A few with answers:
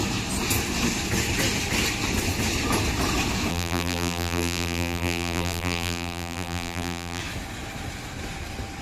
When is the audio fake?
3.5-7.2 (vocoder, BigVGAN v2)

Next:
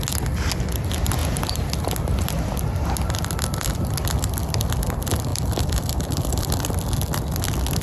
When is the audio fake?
5.3-6.7 (vocoder, BigVGAN v2)

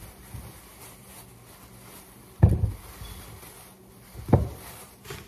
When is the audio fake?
0.0-1.3 (vocoder, BigVGAN v2); 3.9-5.3

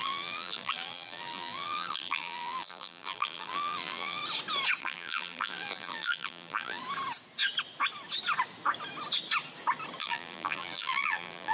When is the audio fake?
0.0-4.2 (vocoder, BigVGAN v2); 4.8-6.8; 10.0-11.5

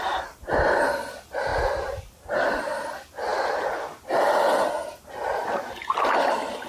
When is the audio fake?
1.5-2.6 (vocoder, BigVGAN v2)